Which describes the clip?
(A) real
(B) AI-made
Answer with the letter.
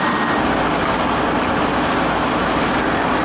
A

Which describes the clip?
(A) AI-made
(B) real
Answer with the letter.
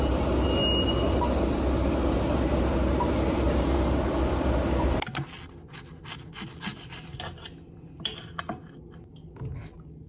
B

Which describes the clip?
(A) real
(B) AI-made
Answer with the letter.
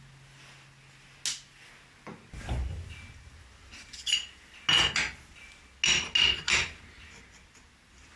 A